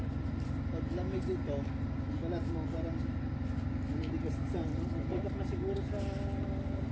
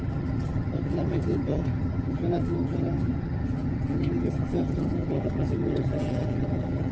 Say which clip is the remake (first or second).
second